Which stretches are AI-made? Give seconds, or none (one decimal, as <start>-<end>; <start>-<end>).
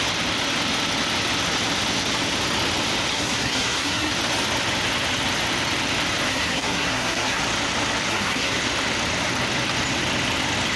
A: 3.1-4.1; 6.3-7.4; 8.1-8.6